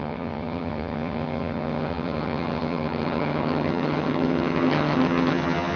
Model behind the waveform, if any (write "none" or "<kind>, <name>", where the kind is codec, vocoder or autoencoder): vocoder, HiFi-GAN